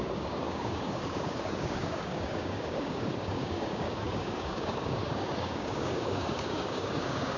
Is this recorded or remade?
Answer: remade